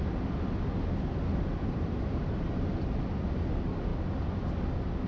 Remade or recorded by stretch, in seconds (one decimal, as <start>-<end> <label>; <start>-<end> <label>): 0.0-1.5 recorded; 1.5-2.7 remade; 2.7-5.1 recorded